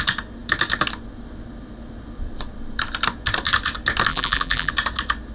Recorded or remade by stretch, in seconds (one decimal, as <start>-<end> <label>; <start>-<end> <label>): 0.0-4.1 recorded; 4.1-4.7 remade; 4.7-5.3 recorded